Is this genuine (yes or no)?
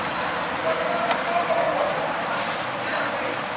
yes